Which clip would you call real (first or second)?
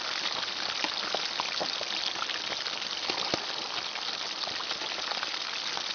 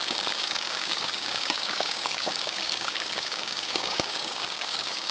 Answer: first